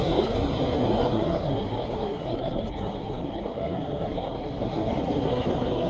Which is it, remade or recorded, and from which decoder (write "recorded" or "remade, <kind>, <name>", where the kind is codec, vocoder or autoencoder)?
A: remade, codec, SNAC